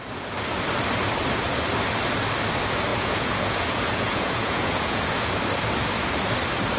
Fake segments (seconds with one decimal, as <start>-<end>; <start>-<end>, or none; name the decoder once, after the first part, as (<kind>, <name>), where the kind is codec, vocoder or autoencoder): 2.9-5.3 (vocoder, Vocos)